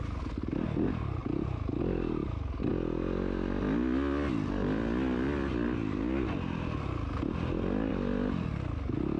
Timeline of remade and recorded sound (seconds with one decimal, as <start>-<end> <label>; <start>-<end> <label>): 0.0-1.2 recorded; 1.2-1.8 remade; 1.8-9.2 recorded